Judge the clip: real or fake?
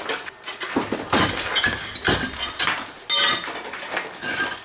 real